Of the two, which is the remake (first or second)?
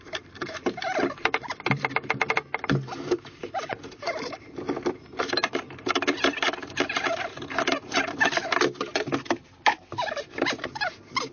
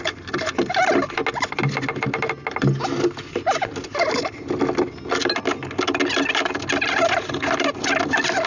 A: first